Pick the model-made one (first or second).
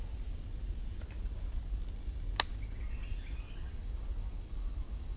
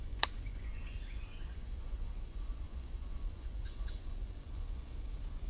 second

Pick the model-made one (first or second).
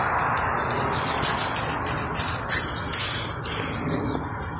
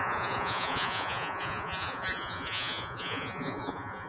second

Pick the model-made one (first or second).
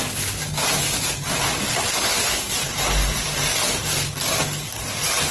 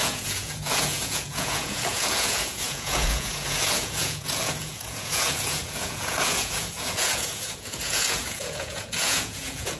second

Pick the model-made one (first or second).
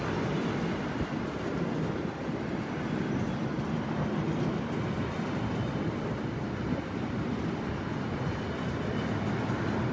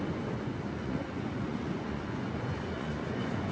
second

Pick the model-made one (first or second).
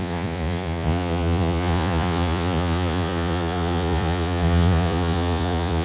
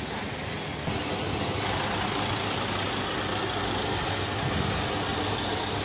first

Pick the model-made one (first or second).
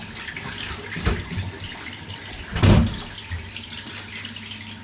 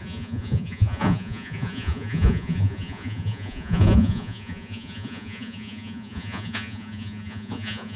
second